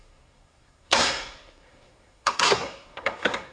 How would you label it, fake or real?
fake